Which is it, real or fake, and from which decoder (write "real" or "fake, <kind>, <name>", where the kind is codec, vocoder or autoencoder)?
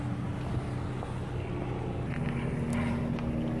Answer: real